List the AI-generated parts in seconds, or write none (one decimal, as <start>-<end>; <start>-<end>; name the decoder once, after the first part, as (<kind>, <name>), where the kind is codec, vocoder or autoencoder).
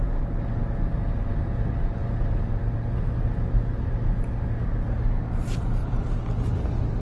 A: 5.8-7.0 (vocoder, BigVGAN v2)